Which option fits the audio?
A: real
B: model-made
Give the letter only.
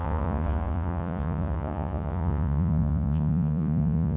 B